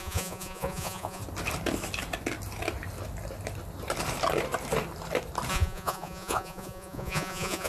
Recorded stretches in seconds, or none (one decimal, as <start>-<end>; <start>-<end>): 1.2-5.5